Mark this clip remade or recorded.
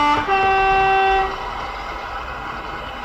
recorded